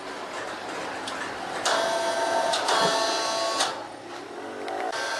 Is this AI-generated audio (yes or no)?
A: no